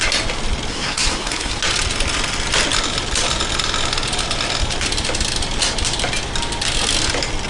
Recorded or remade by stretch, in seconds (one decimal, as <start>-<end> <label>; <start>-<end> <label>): 0.0-0.7 recorded; 0.7-1.6 remade; 1.6-7.5 recorded